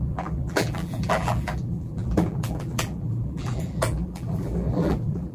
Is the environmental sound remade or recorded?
remade